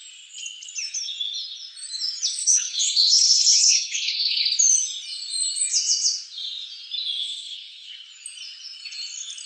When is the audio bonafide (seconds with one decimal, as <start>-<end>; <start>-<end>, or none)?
0.0-2.4; 4.4-7.2; 7.9-9.5